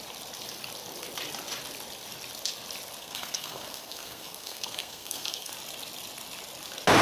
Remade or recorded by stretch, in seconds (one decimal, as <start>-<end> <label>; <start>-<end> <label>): 0.0-3.0 recorded; 3.0-5.5 remade; 5.5-7.0 recorded

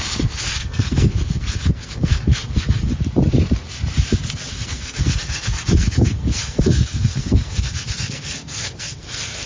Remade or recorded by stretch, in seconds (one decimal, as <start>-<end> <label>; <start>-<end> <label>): 0.0-2.9 remade; 2.9-4.5 recorded; 4.5-9.5 remade

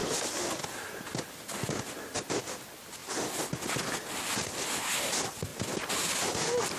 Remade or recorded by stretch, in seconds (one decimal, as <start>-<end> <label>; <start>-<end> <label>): 0.0-6.8 recorded

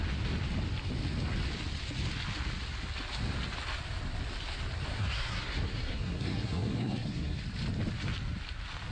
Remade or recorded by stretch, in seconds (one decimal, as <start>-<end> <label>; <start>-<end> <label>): 0.0-4.9 recorded; 4.9-7.4 remade; 7.4-8.9 recorded

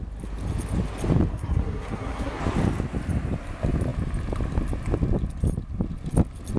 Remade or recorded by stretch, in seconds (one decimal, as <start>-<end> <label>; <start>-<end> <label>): 0.0-1.3 recorded; 1.3-2.4 remade; 2.4-6.6 recorded

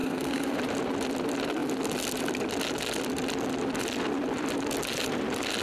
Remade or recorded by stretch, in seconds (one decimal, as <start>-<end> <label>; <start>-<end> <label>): 0.0-0.6 remade; 0.6-5.6 recorded